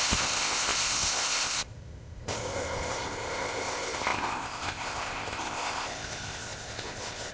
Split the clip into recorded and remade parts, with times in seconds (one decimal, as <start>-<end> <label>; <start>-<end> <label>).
0.0-7.3 remade